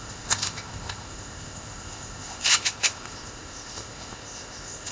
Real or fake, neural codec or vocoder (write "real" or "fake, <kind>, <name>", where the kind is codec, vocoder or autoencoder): fake, codec, ZipCodec